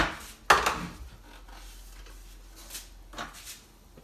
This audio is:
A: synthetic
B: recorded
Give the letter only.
B